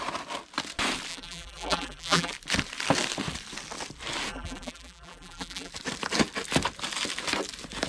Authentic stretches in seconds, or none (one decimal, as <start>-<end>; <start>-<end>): 0.0-1.1; 2.3-4.3; 5.7-7.9